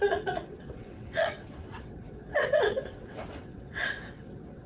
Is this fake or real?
fake